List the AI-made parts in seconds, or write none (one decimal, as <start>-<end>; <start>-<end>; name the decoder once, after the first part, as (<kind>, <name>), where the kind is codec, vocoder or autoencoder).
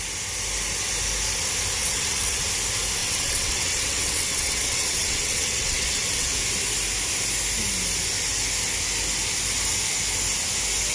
1.8-2.5 (vocoder, WaveNeXt); 3.0-6.4